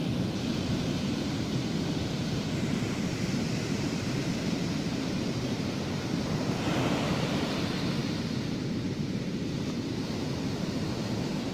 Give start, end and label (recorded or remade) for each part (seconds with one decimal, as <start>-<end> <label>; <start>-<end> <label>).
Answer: 0.0-11.5 remade